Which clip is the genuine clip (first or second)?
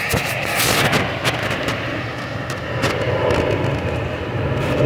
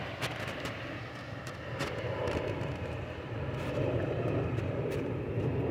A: first